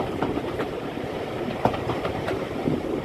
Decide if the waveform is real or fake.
fake